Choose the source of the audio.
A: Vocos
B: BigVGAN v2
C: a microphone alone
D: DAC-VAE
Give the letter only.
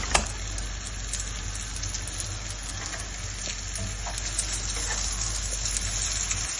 C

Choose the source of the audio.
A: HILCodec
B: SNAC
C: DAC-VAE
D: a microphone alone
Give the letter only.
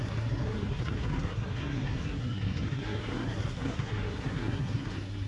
B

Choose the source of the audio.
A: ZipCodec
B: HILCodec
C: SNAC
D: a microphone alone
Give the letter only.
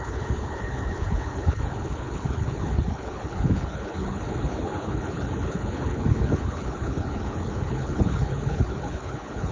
B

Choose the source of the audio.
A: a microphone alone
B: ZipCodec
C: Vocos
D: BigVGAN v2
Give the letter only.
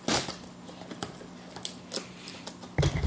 A